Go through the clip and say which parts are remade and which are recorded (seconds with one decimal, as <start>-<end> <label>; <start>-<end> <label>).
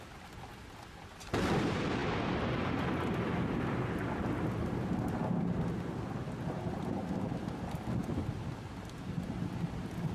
0.0-10.1 recorded